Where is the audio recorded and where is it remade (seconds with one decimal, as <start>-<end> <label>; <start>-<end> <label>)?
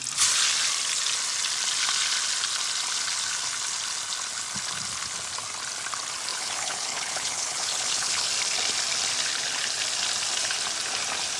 0.0-6.3 recorded; 6.3-8.3 remade; 8.3-11.4 recorded